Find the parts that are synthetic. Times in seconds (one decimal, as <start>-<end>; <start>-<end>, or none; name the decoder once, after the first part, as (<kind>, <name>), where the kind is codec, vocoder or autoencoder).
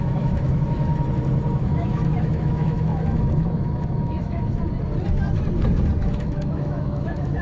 0.0-0.9 (autoencoder, DAC-VAE); 1.6-4.6; 6.0-7.4